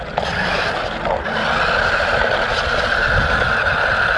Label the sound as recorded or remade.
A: recorded